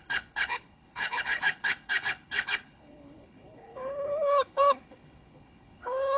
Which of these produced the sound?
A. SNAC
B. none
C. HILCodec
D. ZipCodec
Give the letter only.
C